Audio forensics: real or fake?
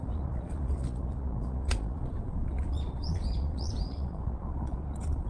fake